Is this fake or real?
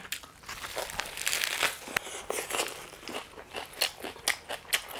real